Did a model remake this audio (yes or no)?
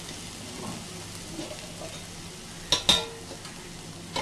no